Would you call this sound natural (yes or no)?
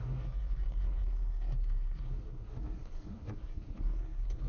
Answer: no